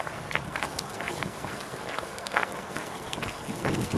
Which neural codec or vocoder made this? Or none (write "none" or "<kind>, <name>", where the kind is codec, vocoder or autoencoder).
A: codec, SNAC